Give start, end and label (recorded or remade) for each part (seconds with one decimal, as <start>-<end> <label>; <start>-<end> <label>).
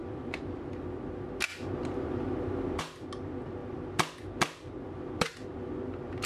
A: 0.0-0.7 remade; 0.7-3.6 recorded; 3.6-5.7 remade; 5.7-6.3 recorded